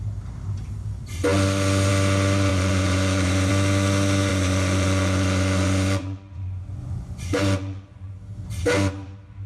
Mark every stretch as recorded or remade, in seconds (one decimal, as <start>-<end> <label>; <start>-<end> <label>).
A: 0.0-2.5 recorded; 2.5-3.5 remade; 3.5-4.3 recorded; 4.3-8.1 remade; 8.1-9.5 recorded